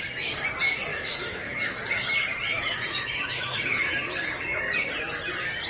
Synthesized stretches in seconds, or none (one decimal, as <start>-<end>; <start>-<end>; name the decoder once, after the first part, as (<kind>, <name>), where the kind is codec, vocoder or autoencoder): 0.9-1.7 (autoencoder, DAC-VAE); 2.5-4.6